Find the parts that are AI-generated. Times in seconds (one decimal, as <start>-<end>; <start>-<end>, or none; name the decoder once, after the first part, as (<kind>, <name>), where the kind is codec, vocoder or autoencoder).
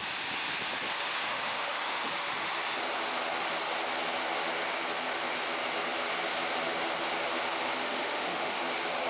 1.2-2.0 (autoencoder, DAC-VAE); 7.8-8.6